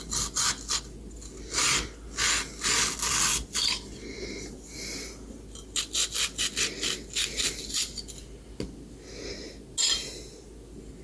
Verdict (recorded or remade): recorded